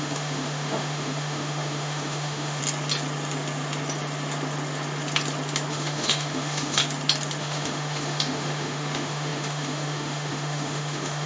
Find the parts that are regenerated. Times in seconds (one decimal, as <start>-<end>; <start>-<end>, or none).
0.0-2.6; 5.7-6.8; 7.4-11.3